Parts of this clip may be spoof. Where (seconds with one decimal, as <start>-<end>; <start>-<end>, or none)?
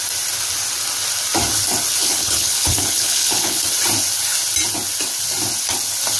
2.0-3.6